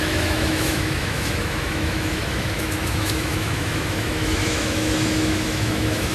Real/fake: fake